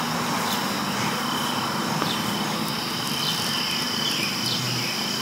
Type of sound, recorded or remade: recorded